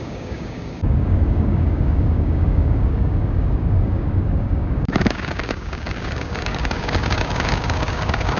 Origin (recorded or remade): remade